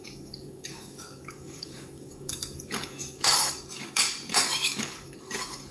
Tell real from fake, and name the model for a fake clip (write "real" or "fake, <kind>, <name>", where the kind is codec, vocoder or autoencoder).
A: fake, codec, DAC